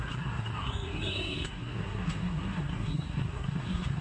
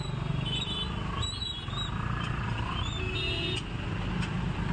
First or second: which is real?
second